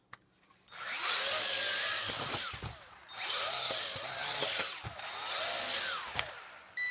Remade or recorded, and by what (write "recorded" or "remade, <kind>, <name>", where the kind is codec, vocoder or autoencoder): recorded